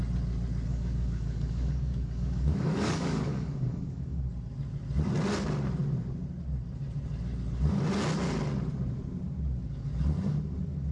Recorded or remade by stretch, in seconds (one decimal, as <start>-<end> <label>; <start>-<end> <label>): 0.0-0.7 recorded; 0.7-4.2 remade; 4.2-10.9 recorded